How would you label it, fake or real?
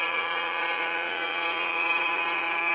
fake